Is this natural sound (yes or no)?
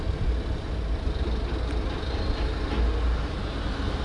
yes